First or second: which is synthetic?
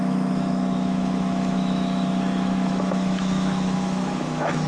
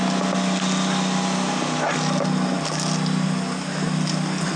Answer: first